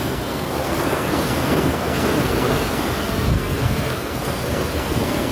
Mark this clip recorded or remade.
remade